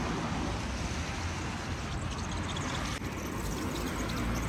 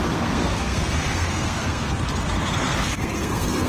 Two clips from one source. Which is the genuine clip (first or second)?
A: first